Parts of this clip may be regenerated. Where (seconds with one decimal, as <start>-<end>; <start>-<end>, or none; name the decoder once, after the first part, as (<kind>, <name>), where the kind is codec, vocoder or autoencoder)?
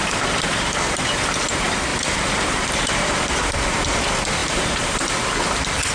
1.9-3.5 (vocoder, BigVGAN v2); 4.4-5.1